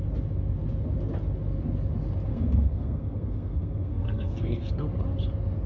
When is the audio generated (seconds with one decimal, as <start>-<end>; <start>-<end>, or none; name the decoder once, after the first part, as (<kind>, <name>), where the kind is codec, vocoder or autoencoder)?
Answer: 2.3-4.8 (codec, SNAC)